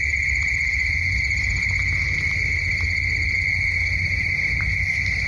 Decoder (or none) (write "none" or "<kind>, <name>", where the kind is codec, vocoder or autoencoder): none